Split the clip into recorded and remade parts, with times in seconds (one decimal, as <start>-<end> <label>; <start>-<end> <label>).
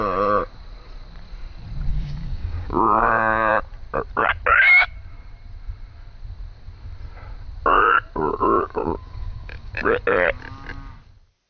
0.0-1.9 recorded; 1.9-3.5 remade; 3.5-8.3 recorded; 8.3-9.7 remade; 9.7-11.5 recorded